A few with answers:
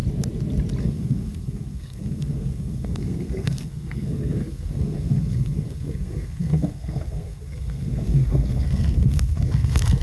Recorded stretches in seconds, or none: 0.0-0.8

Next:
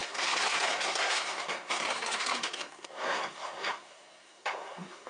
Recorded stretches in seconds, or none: none

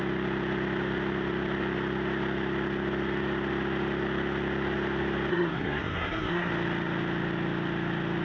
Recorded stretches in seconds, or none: 0.0-5.3; 6.5-8.2

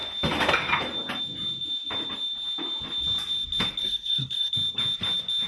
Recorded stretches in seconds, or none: 0.0-3.8; 4.5-5.5

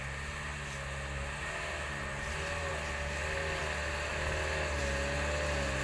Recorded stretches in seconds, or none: 0.0-5.8

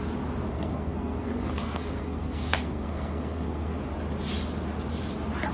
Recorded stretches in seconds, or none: 0.0-0.5; 3.8-5.5

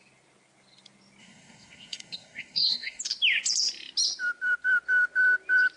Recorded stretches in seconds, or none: 0.0-1.2; 3.0-5.8

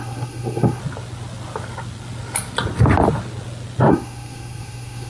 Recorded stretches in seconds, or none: 0.8-3.9